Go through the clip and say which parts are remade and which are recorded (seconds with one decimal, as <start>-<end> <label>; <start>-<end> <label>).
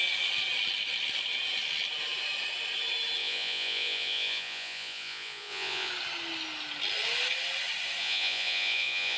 0.0-3.2 recorded; 3.2-5.9 remade; 5.9-8.0 recorded; 8.0-9.2 remade